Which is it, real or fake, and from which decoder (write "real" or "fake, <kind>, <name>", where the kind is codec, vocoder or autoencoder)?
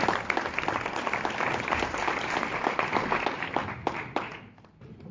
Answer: real